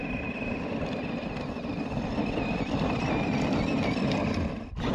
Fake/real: real